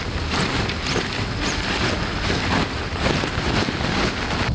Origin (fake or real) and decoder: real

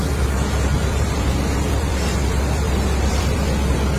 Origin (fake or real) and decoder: fake, vocoder, BigVGAN v2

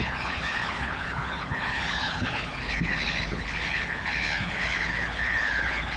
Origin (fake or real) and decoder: fake, codec, HILCodec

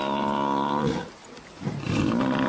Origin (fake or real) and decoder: real